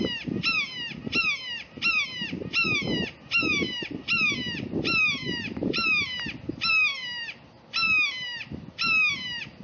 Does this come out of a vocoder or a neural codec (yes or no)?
no